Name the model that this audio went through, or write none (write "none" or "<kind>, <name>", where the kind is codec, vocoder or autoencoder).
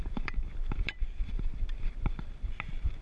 vocoder, BigVGAN v2